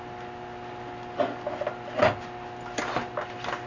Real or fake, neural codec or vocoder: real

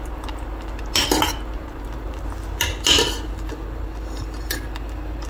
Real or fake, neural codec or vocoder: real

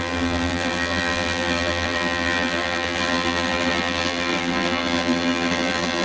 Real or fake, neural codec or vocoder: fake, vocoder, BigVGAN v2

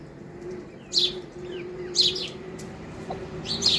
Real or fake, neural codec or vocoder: fake, vocoder, BigVGAN v2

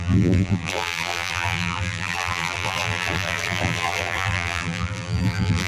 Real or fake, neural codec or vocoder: fake, vocoder, BigVGAN v2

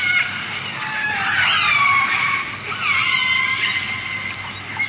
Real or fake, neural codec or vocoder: real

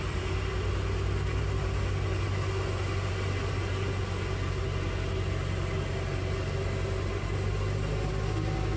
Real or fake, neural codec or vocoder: real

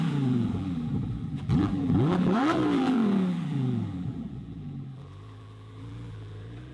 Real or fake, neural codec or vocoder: fake, vocoder, BigVGAN v2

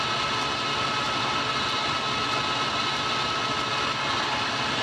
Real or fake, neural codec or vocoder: real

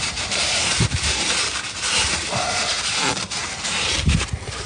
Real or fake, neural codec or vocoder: fake, vocoder, BigVGAN v2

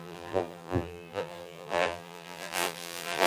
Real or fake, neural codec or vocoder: fake, vocoder, BigVGAN v2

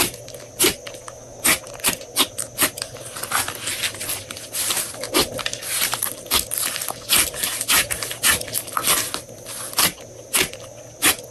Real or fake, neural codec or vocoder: real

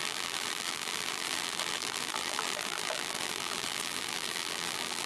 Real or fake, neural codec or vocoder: fake, vocoder, BigVGAN v2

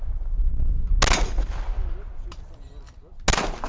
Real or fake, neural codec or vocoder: real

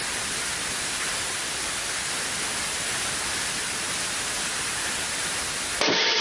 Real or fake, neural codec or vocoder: real